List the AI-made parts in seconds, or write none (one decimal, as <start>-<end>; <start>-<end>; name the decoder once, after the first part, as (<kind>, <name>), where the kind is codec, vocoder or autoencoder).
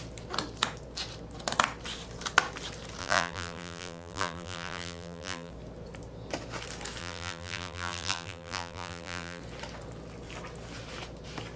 3.0-5.5 (vocoder, BigVGAN v2); 7.0-9.4